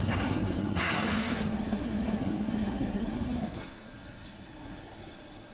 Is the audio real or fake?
fake